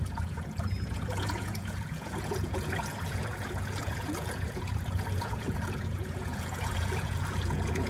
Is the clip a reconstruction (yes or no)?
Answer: yes